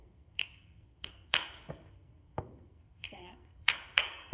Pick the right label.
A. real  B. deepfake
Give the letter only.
B